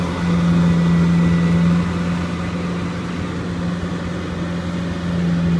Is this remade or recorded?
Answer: recorded